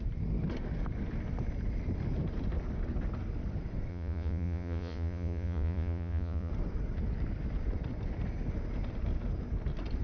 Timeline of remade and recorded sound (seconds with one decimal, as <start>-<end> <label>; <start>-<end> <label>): 0.0-3.9 recorded; 3.9-6.5 remade; 6.5-10.0 recorded